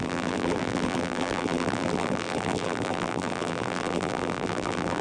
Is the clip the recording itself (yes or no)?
no